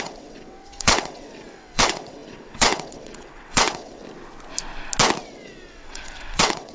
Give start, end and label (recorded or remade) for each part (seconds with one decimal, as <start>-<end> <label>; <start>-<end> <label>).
0.0-4.0 remade; 4.0-5.2 recorded; 5.2-6.7 remade